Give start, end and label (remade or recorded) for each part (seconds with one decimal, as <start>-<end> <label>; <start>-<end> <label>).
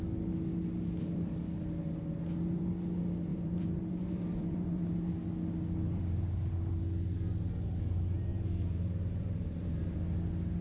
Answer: 0.0-3.3 recorded; 3.3-5.1 remade; 5.1-8.3 recorded; 8.3-10.0 remade; 10.0-10.6 recorded